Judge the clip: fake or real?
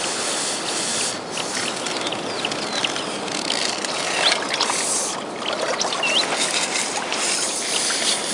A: real